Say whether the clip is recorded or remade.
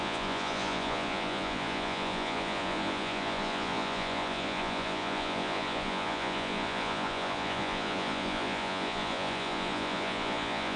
remade